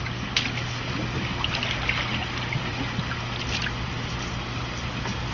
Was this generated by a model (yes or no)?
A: no